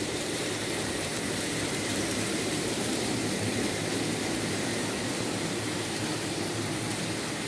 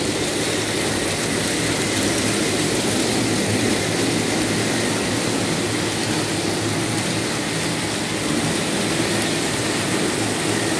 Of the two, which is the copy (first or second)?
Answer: first